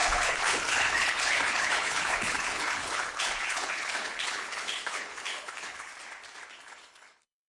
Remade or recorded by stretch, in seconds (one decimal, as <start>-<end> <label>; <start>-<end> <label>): 0.0-5.9 remade; 5.9-6.5 recorded; 6.5-7.5 remade